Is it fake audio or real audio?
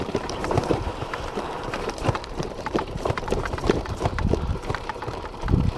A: fake